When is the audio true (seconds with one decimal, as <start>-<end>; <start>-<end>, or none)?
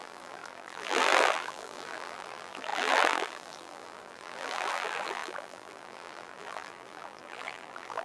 none